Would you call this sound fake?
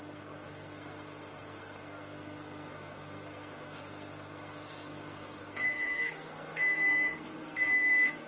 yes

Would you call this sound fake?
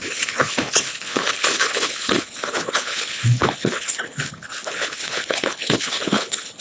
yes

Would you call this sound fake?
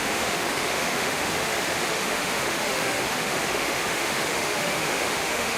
yes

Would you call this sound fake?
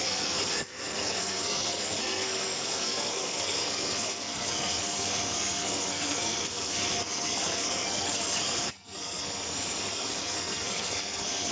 yes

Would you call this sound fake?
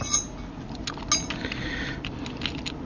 no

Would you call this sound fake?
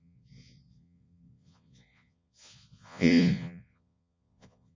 yes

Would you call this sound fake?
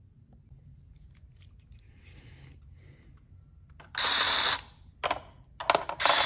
no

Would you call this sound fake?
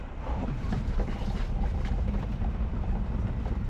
yes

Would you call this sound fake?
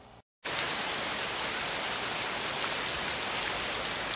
no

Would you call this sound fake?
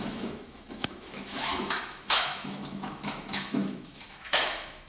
yes